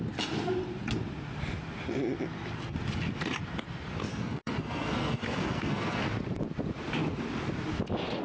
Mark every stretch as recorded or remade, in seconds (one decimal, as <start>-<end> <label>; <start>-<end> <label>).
0.0-4.1 recorded; 4.1-6.0 remade; 6.0-8.2 recorded